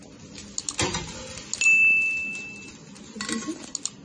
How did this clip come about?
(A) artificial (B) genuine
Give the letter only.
B